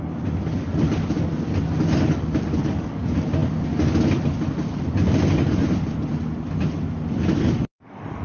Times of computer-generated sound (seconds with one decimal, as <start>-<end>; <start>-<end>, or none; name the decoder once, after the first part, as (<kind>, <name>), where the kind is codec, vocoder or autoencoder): none